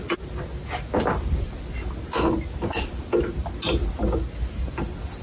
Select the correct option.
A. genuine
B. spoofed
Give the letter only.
A